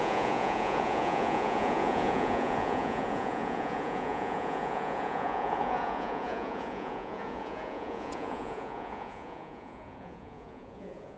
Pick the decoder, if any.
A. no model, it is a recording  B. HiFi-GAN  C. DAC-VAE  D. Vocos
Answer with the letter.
D